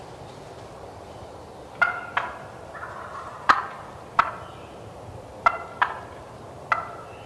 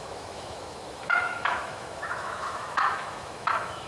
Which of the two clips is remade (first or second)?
second